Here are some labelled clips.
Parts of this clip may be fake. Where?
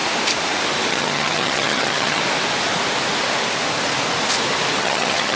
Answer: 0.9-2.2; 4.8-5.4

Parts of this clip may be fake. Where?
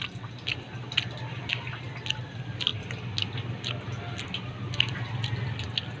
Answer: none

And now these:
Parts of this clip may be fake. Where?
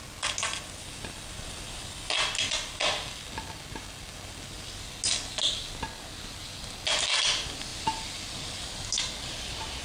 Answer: none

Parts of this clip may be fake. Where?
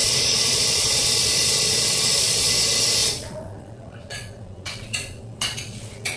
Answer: 0.0-2.5; 3.0-6.2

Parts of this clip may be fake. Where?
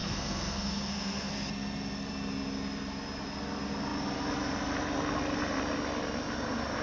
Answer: 0.0-1.3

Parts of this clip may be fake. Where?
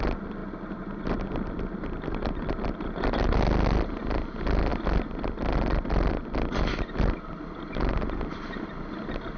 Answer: none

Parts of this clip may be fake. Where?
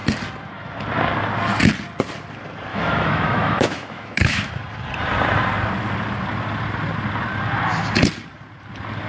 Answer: 2.7-4.5